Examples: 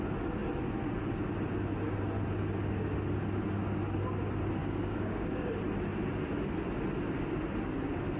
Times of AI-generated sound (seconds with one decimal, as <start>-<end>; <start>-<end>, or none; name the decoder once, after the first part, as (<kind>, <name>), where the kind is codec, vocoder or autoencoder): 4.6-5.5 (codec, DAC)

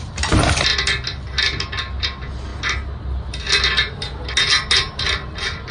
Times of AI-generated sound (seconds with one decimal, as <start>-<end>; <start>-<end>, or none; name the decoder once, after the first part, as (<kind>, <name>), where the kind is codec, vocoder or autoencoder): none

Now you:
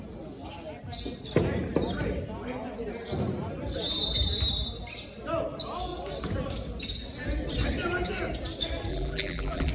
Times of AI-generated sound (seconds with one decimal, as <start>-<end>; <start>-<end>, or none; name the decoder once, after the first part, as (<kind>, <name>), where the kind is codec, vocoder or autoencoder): 8.9-9.7 (vocoder, BigVGAN v2)

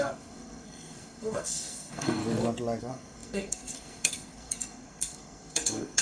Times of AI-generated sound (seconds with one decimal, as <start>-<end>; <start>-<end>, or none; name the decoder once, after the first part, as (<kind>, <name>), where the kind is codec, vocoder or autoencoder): 0.0-2.2 (codec, SNAC); 2.8-6.0